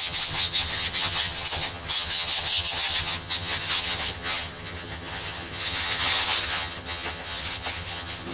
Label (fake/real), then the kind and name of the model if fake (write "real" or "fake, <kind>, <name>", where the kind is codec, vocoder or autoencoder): fake, vocoder, HiFi-GAN